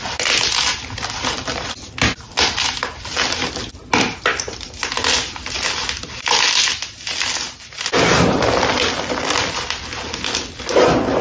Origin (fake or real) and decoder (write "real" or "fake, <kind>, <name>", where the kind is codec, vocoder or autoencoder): real